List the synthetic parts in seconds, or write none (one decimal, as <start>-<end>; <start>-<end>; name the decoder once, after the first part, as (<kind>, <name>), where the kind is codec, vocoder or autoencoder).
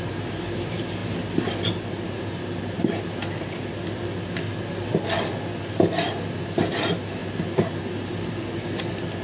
none